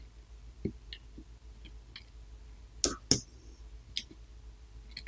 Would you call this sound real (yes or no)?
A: yes